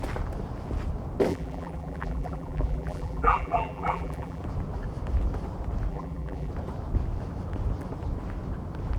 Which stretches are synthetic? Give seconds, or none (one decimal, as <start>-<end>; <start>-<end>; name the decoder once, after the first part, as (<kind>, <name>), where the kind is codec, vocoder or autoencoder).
1.3-4.4 (vocoder, BigVGAN v2); 5.9-6.5